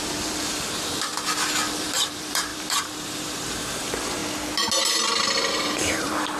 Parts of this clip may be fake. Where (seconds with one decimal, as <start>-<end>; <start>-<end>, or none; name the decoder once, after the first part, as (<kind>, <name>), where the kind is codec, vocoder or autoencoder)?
0.0-1.1 (vocoder, BigVGAN v2); 1.8-4.2; 5.5-6.4